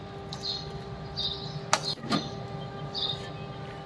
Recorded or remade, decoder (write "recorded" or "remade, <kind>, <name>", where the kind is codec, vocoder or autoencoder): recorded